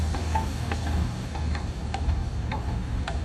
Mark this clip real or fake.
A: fake